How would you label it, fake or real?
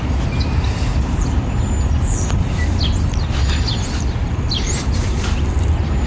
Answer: real